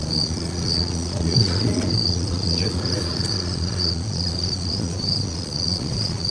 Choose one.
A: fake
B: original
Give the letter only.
A